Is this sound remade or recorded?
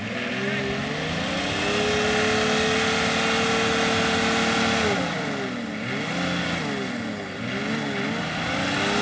recorded